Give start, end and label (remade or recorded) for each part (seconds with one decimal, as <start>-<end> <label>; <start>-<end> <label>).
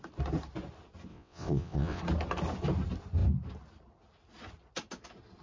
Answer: 0.0-1.1 recorded; 1.1-2.0 remade; 2.0-5.4 recorded